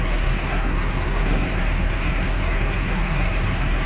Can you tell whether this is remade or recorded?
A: remade